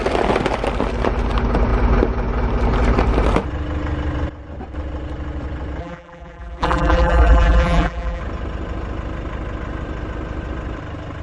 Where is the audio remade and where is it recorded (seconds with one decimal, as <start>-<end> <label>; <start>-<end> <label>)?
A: 0.0-5.8 recorded; 5.8-8.2 remade; 8.2-11.2 recorded